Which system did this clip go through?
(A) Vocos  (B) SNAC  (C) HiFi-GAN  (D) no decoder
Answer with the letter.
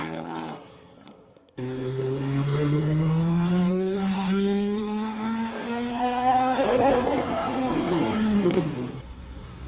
B